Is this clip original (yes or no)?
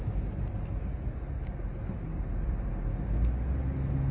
yes